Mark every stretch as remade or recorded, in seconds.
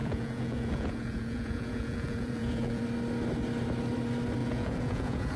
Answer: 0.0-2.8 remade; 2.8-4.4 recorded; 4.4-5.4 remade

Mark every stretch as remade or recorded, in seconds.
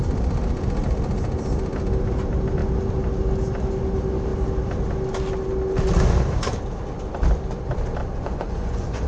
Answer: 0.0-8.0 recorded; 8.0-9.1 remade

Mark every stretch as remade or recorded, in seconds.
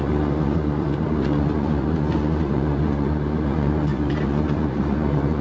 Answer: 0.0-5.4 remade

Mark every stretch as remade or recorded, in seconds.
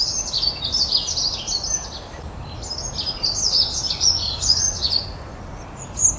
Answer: 0.0-3.7 recorded; 3.7-5.4 remade; 5.4-6.2 recorded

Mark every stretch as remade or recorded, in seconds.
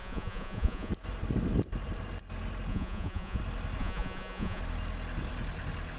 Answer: 0.0-0.9 remade; 0.9-2.7 recorded; 2.7-3.4 remade; 3.4-3.8 recorded; 3.8-4.6 remade; 4.6-6.0 recorded